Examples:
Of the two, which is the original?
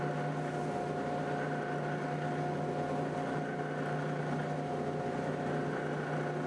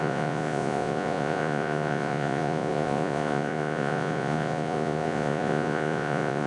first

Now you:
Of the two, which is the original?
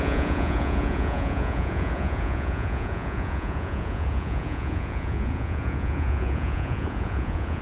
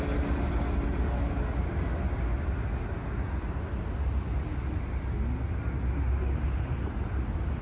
second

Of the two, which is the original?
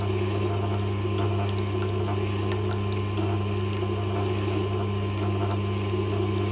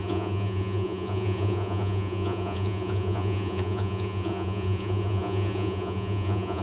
first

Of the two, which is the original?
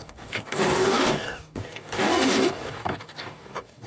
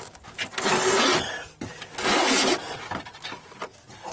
second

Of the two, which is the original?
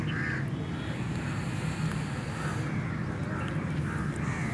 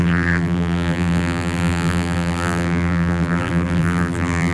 first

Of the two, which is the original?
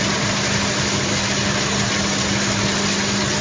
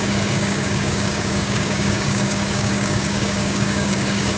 first